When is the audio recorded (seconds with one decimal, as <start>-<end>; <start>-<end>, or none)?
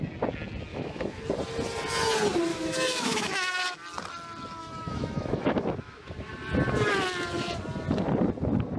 0.0-0.7; 1.2-2.5; 3.6-4.6; 6.3-8.8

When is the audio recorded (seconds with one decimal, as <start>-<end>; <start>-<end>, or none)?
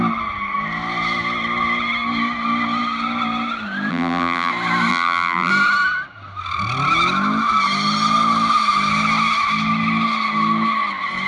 0.0-3.9; 4.5-4.9; 5.5-11.3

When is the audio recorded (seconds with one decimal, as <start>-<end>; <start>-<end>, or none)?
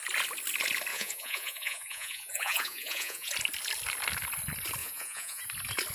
0.0-0.9; 3.3-4.8; 5.4-5.9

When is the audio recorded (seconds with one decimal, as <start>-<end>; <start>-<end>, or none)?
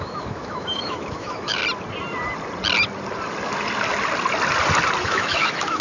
1.6-5.0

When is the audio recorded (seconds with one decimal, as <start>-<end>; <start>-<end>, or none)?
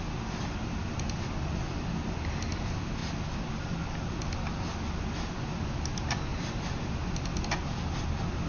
0.0-8.5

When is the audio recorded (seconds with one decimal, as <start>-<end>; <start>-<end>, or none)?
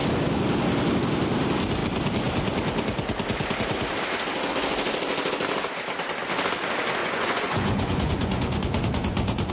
0.0-7.0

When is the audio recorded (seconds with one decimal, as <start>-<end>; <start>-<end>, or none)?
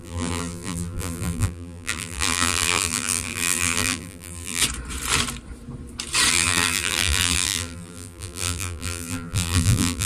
4.6-6.3